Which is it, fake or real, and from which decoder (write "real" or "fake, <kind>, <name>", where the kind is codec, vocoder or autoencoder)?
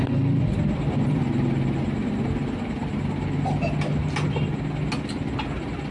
real